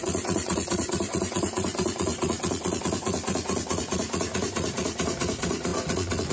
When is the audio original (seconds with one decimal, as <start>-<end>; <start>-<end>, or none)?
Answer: none